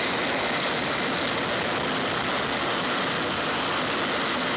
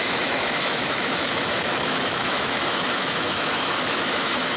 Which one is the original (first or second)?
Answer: first